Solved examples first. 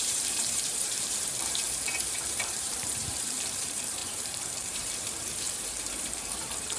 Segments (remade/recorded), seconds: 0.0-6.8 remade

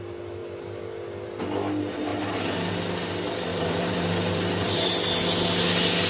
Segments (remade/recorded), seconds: 0.0-3.5 recorded; 3.5-4.9 remade; 4.9-6.1 recorded

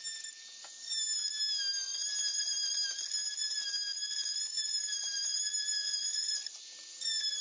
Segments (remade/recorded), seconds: 0.0-7.4 recorded

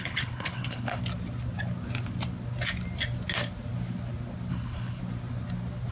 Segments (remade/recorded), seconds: 0.0-1.0 remade; 1.0-4.5 recorded; 4.5-5.0 remade; 5.0-5.9 recorded